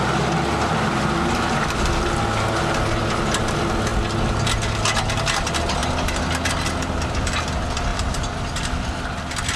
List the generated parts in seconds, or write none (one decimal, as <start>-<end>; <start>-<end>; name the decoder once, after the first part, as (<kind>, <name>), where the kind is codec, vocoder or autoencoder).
7.9-8.7 (vocoder, BigVGAN v2)